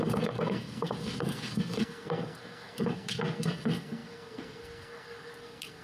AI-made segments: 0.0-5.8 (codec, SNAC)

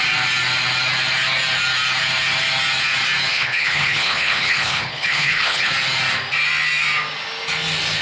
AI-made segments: 3.3-5.7 (codec, HILCodec)

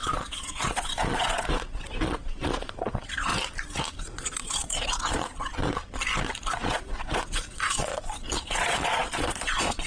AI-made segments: 0.0-3.3 (vocoder, Vocos); 4.0-5.5; 6.6-7.9; 8.4-9.9

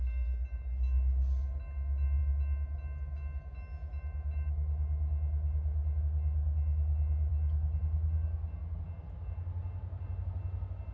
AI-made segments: none

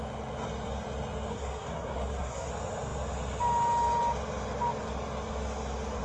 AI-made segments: 1.3-2.5 (codec, SNAC)

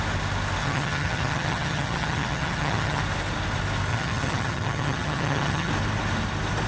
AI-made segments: 0.6-3.0 (vocoder, HiFi-GAN); 3.9-5.7

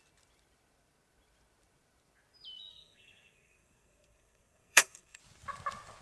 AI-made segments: 2.7-5.2 (codec, SNAC)